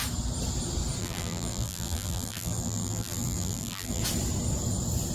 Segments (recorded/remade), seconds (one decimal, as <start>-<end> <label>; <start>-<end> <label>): 0.0-1.0 recorded; 1.0-4.0 remade; 4.0-5.1 recorded